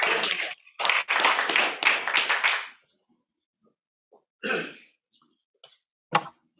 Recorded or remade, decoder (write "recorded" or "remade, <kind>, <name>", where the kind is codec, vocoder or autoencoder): recorded